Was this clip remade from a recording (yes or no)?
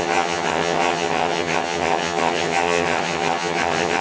yes